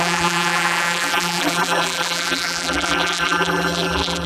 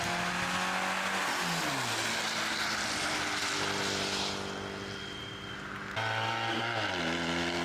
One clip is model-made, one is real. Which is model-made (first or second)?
first